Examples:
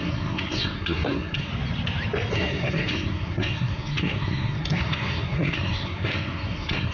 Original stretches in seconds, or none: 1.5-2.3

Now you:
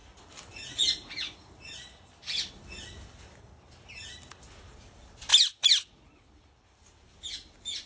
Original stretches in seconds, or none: 0.0-7.9